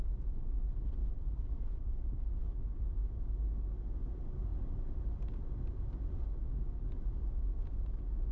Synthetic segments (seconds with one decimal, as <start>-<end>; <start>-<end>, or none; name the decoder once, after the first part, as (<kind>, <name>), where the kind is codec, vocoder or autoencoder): none